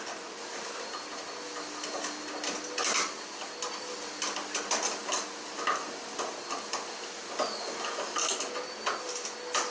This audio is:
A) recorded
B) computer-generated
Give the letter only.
A